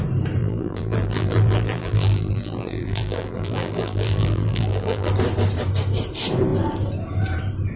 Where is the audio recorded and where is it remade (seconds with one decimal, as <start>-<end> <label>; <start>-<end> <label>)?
0.0-0.4 recorded; 0.4-5.1 remade; 5.1-7.8 recorded